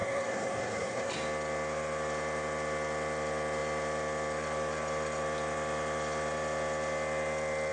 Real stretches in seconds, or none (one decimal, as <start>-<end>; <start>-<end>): 1.1-7.7